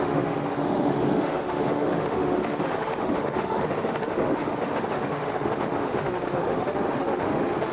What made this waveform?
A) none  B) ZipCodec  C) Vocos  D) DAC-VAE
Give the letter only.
D